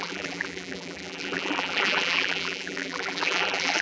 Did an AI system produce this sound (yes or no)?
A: yes